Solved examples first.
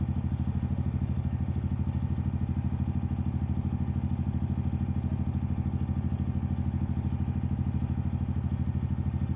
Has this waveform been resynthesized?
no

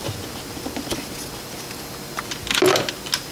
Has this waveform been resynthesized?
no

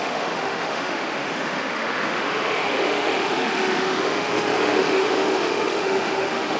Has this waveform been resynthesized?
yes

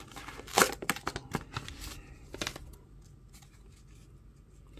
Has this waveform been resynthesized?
no